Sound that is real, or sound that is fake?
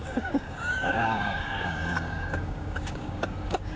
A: fake